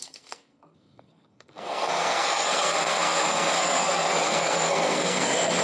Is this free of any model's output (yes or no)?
no